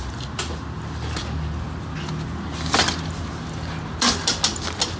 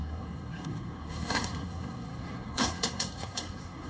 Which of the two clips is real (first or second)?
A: first